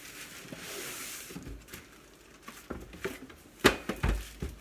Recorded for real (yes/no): yes